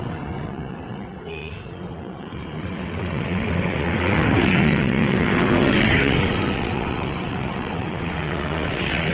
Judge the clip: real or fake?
fake